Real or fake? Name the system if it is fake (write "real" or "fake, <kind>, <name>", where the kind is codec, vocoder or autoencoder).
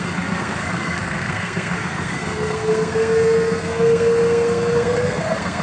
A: fake, codec, SNAC